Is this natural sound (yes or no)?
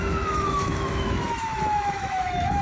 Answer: no